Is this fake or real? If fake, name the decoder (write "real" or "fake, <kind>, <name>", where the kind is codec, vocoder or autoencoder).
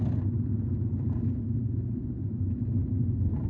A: real